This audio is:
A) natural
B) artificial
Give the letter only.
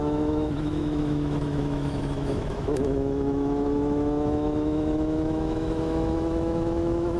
B